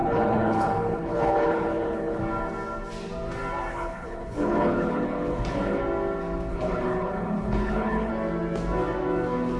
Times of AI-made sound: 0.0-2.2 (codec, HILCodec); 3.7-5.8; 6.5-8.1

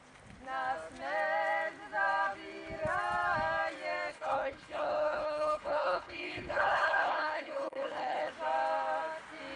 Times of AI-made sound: 4.1-8.3 (codec, HILCodec)

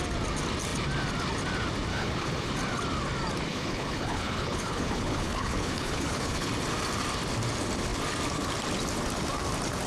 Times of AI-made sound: 1.9-2.5 (codec, HILCodec); 3.5-6.5

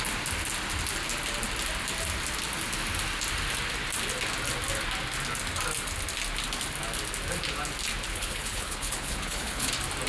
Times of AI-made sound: 8.1-9.7 (codec, HILCodec)

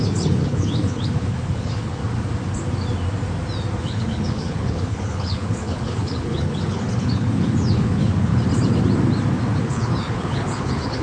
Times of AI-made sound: 0.0-2.0 (codec, HILCodec); 3.8-8.3; 9.6-11.0

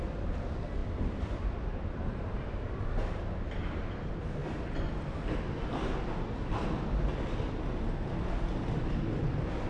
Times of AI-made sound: none

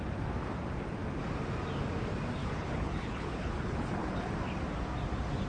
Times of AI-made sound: 2.4-4.3 (codec, HILCodec)

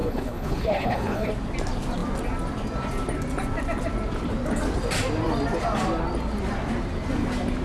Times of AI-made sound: 0.0-1.3 (codec, HILCodec)